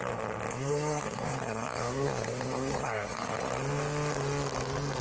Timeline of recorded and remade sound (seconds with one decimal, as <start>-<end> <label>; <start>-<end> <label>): 0.0-0.5 recorded; 0.5-3.5 remade; 3.5-5.0 recorded